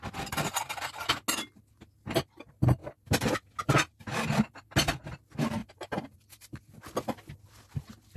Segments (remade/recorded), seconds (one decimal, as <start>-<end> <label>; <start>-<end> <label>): 0.0-2.8 recorded; 2.8-3.6 remade; 3.6-5.6 recorded; 5.6-7.4 remade; 7.4-8.2 recorded